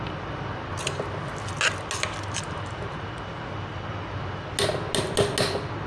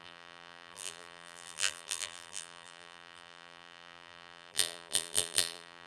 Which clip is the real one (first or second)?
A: first